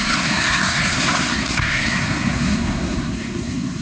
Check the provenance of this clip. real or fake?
fake